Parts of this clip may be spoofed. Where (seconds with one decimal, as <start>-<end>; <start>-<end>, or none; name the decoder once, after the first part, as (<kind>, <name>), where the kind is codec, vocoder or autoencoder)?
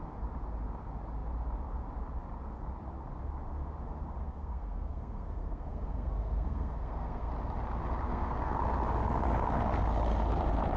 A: 4.2-7.3 (codec, SNAC); 8.1-8.6